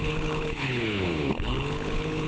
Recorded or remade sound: remade